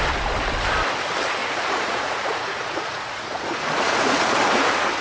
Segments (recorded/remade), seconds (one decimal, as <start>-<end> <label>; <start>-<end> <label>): 0.0-1.4 recorded; 1.4-4.4 remade; 4.4-5.0 recorded